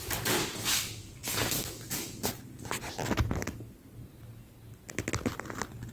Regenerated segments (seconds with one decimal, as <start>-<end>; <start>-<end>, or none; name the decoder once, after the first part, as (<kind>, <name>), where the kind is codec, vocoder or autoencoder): none